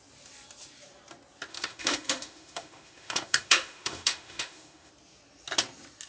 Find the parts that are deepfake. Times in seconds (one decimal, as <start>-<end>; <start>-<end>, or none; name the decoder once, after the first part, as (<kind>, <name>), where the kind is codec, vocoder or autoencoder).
1.5-4.9 (autoencoder, DAC-VAE)